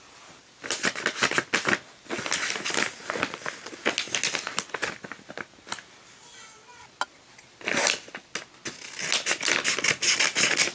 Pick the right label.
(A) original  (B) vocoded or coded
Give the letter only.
A